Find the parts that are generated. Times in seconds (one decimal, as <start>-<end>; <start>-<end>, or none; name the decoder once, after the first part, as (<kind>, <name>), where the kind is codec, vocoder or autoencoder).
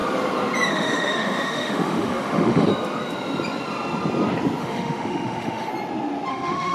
0.7-2.7 (autoencoder, DAC-VAE); 4.6-5.7; 6.3-6.7